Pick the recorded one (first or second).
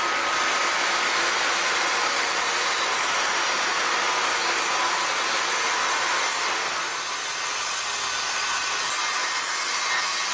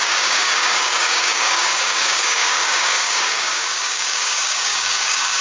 first